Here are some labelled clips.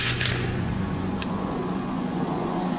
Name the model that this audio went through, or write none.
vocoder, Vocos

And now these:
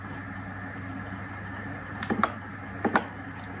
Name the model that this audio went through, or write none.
none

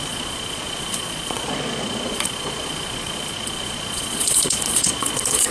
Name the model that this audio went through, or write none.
vocoder, Vocos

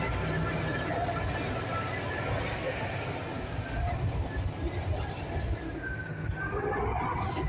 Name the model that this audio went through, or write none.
none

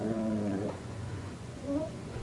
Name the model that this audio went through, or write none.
vocoder, Vocos